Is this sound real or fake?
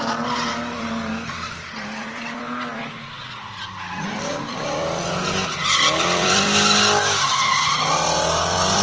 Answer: fake